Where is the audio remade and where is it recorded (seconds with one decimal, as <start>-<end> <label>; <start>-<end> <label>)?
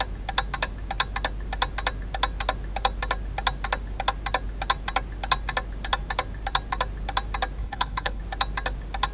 0.0-7.6 recorded; 7.6-8.2 remade; 8.2-9.1 recorded